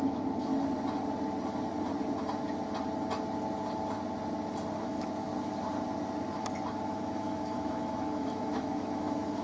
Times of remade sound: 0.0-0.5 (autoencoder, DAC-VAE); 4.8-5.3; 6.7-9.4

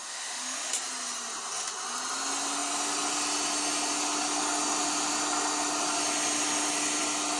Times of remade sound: 0.0-0.7 (autoencoder, DAC-VAE)

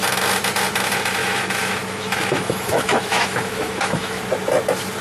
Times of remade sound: 1.2-4.2 (autoencoder, DAC-VAE)

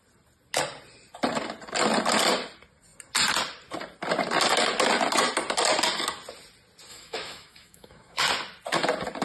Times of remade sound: 6.9-8.2 (autoencoder, DAC-VAE)

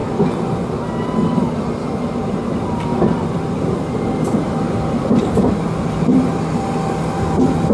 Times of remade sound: none